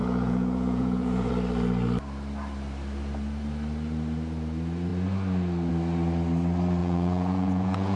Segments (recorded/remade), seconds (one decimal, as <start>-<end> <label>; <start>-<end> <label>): 0.0-1.3 remade; 1.3-6.8 recorded; 6.8-8.0 remade